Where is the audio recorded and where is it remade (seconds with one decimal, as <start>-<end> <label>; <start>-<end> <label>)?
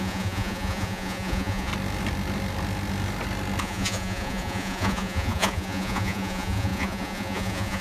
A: 0.0-1.7 remade; 1.7-3.6 recorded; 3.6-7.8 remade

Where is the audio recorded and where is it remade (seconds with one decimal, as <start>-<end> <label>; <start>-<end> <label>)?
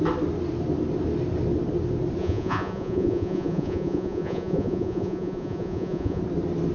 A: 0.0-2.2 recorded; 2.2-6.2 remade; 6.2-6.7 recorded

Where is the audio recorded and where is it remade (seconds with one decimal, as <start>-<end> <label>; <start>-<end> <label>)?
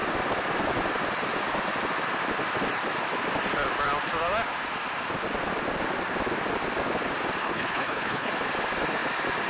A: 0.0-7.4 recorded; 7.4-8.3 remade; 8.3-9.5 recorded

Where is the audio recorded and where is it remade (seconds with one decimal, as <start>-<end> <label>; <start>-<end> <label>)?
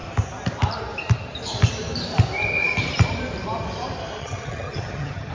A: 0.0-4.2 recorded; 4.2-5.3 remade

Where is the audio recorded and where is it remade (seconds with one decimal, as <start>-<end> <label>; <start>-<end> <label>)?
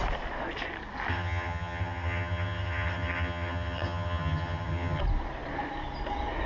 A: 0.0-1.1 recorded; 1.1-5.0 remade; 5.0-6.5 recorded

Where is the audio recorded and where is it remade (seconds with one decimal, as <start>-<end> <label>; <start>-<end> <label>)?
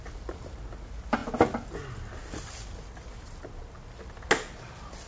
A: 0.0-5.1 recorded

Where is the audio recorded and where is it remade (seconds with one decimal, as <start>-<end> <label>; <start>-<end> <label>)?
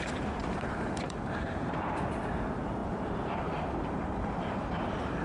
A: 0.0-5.2 remade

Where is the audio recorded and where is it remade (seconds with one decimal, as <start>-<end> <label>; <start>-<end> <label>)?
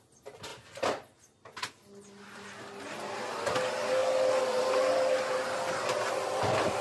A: 0.0-6.8 recorded